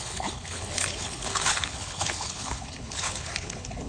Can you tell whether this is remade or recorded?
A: remade